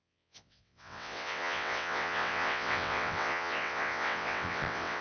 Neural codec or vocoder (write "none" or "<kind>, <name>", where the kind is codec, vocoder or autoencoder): vocoder, WaveNeXt